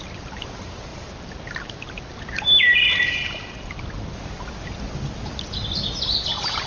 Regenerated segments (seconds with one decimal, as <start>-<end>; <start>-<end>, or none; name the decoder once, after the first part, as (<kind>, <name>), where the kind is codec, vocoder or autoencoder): none